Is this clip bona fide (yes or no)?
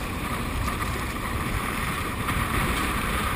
no